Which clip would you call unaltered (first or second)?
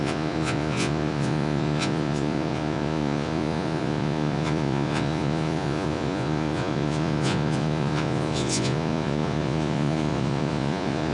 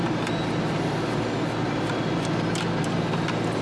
second